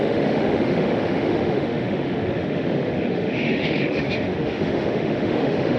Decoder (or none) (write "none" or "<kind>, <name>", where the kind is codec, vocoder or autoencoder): autoencoder, DAC-VAE